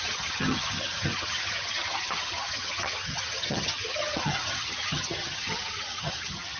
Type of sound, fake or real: fake